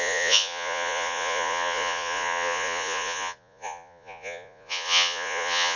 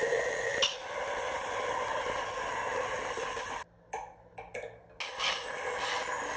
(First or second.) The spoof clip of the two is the first